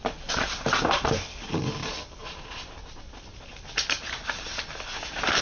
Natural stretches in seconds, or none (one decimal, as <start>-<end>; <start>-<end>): 2.2-3.5